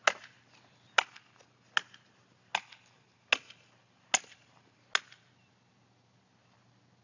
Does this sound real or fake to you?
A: real